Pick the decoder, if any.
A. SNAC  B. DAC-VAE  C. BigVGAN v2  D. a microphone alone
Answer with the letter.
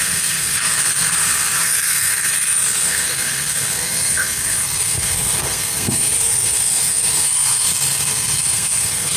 A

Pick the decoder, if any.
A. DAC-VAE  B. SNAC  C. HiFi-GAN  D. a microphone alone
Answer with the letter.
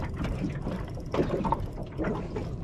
D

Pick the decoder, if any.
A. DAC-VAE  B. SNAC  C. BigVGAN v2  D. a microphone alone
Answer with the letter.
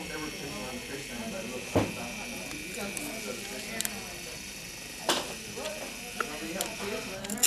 D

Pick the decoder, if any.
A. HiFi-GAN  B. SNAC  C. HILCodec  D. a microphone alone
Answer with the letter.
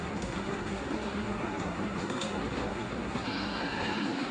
B